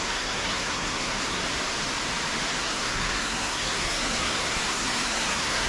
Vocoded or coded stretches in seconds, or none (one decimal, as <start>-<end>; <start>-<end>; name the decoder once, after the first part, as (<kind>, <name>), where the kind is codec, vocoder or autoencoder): 0.0-1.4 (codec, SNAC); 2.6-5.7